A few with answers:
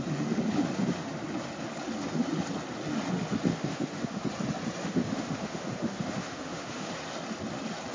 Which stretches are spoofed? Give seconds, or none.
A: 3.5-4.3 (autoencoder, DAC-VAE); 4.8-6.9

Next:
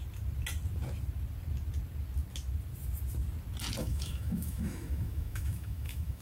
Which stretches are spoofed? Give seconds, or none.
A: 3.8-6.2 (autoencoder, DAC-VAE)

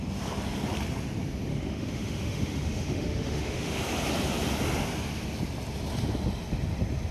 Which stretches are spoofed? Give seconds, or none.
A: 1.5-3.8 (autoencoder, DAC-VAE)

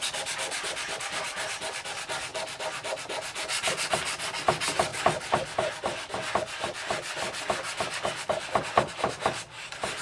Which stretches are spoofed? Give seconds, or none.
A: none

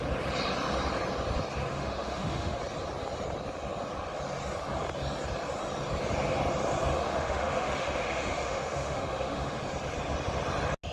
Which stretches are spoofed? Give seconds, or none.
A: 1.7-2.6 (autoencoder, DAC-VAE); 6.9-9.6

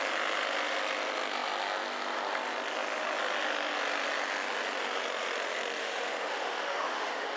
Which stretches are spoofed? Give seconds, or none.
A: 5.8-7.4 (autoencoder, DAC-VAE)